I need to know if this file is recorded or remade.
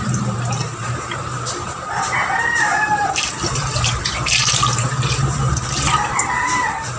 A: remade